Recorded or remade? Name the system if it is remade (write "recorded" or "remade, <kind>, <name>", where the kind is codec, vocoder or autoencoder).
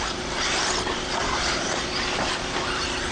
recorded